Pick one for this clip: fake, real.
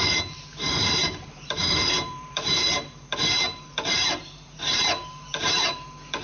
fake